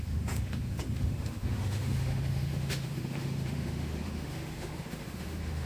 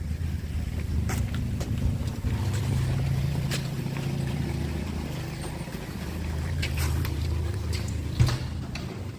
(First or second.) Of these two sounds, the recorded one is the second